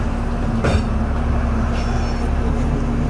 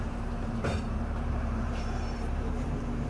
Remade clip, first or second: second